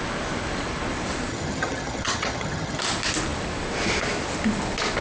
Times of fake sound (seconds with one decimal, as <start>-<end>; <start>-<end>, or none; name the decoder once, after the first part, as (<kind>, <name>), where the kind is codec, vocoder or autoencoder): 1.3-2.8 (vocoder, HiFi-GAN)